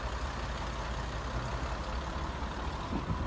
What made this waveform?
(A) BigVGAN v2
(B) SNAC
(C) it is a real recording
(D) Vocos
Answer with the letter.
C